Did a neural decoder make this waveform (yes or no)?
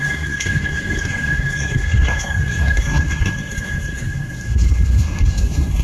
yes